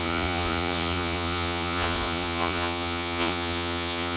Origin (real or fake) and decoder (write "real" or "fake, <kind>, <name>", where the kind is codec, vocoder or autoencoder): fake, vocoder, Vocos